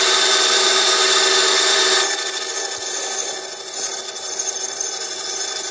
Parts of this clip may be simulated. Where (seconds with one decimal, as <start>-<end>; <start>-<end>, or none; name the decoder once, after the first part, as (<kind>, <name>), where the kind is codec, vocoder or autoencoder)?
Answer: none